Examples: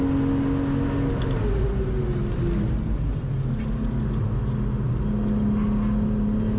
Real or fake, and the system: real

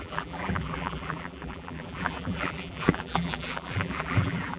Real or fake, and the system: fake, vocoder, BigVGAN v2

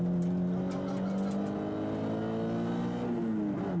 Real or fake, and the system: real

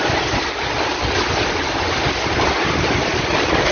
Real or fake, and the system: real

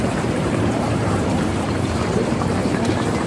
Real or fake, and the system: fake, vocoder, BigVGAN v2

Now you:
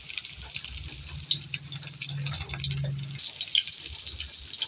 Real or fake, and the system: real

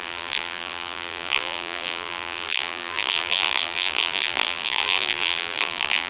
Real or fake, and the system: fake, vocoder, BigVGAN v2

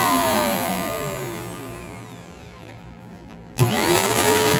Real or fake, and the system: fake, vocoder, BigVGAN v2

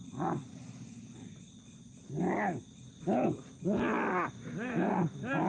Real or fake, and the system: real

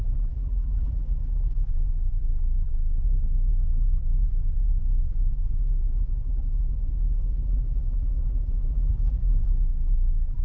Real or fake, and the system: fake, vocoder, BigVGAN v2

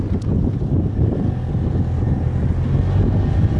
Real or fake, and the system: real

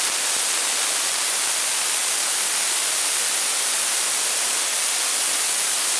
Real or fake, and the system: real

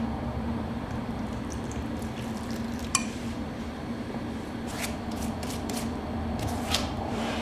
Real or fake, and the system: fake, vocoder, BigVGAN v2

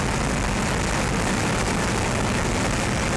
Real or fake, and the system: real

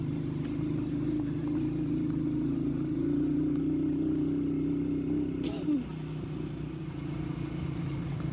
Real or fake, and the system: real